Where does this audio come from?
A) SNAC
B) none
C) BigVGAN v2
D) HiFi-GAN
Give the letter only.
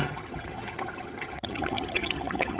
D